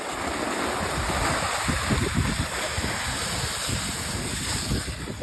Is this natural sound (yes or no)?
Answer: yes